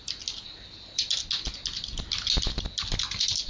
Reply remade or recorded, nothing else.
recorded